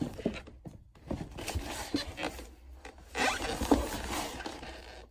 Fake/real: real